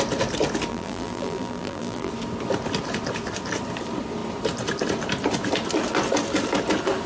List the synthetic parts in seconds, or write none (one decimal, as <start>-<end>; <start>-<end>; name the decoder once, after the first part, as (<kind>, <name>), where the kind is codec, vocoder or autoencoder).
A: 0.7-2.1 (vocoder, BigVGAN v2)